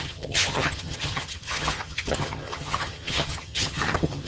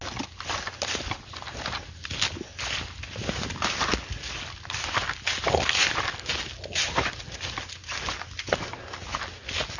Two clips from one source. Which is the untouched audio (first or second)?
second